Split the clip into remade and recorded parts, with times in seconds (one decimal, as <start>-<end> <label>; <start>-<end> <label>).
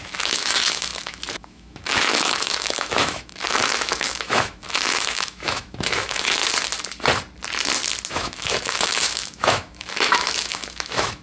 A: 0.0-6.4 remade; 6.4-8.1 recorded; 8.1-11.2 remade